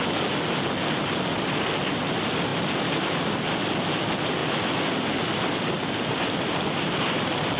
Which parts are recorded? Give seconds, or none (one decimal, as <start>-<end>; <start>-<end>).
0.0-2.5; 3.2-4.4; 6.5-7.6